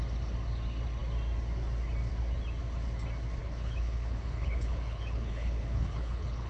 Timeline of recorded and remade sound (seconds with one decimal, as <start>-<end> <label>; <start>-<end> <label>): 0.0-3.4 recorded; 3.4-6.5 remade